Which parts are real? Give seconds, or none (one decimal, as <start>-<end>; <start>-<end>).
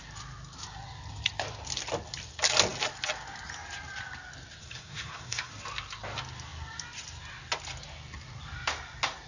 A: 0.0-4.6; 5.5-9.3